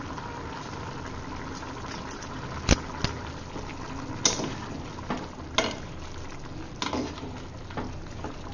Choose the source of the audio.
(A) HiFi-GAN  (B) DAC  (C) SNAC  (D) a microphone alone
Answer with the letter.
D